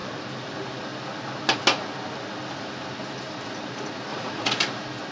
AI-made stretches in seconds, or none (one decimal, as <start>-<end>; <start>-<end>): 4.1-4.6